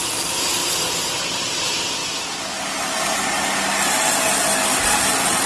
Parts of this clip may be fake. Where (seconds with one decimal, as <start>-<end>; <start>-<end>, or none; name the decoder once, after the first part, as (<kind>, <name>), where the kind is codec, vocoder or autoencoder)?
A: none